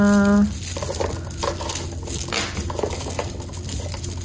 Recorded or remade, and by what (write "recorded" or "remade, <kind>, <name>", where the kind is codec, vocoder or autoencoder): recorded